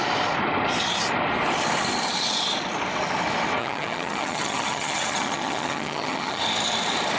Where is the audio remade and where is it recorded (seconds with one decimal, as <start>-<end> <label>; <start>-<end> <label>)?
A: 0.0-3.6 recorded; 3.6-6.4 remade; 6.4-7.2 recorded

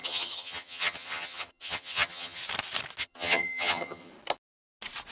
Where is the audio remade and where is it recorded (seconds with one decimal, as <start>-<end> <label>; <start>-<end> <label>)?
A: 0.0-2.4 remade; 2.4-3.0 recorded; 3.0-4.1 remade; 4.1-5.1 recorded